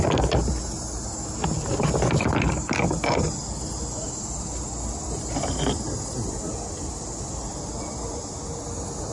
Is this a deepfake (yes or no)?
no